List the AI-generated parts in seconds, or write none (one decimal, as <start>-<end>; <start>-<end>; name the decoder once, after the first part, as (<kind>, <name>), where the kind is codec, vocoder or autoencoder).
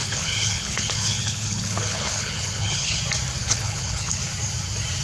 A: 0.0-3.0 (codec, HILCodec); 3.4-4.2